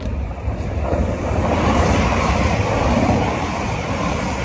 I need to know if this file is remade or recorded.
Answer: remade